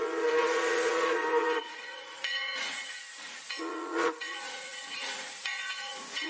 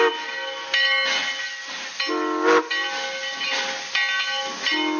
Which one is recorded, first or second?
second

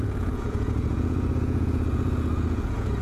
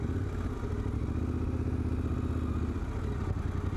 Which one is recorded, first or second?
second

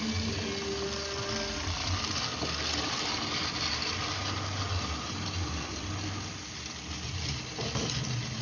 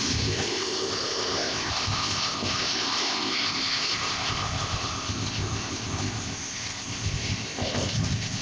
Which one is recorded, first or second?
first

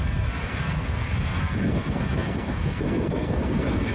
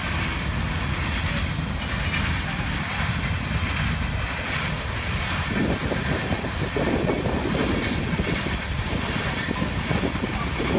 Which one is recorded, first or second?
second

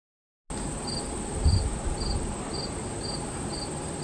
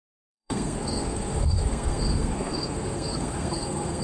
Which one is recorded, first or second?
first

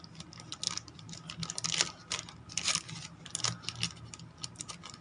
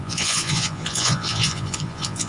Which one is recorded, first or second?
first